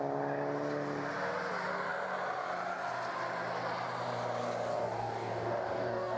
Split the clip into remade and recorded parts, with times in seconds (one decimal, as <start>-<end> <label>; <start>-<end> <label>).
0.0-4.7 recorded; 4.7-6.2 remade

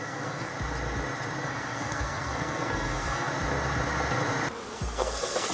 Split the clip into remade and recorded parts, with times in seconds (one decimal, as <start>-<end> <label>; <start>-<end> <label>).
0.0-0.5 remade; 0.5-1.4 recorded; 1.4-3.3 remade; 3.3-4.7 recorded; 4.7-5.5 remade

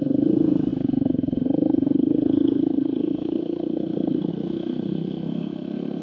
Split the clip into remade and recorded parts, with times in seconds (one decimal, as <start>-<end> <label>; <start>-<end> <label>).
0.0-6.0 remade

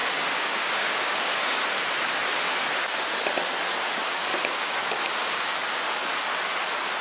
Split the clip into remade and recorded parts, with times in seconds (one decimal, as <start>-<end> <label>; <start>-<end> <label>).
0.0-1.6 remade; 1.6-4.0 recorded; 4.0-6.1 remade; 6.1-7.0 recorded

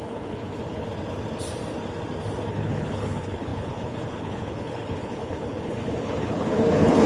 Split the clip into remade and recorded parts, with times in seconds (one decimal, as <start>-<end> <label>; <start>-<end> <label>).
0.0-0.9 remade; 0.9-2.5 recorded; 2.5-7.1 remade